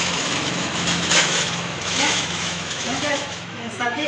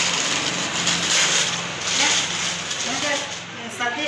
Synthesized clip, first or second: first